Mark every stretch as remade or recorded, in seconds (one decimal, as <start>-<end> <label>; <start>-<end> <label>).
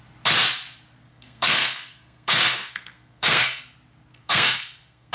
0.0-1.1 recorded; 1.1-3.6 remade; 3.6-4.1 recorded; 4.1-5.1 remade